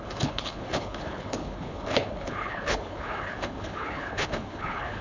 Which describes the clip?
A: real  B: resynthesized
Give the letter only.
B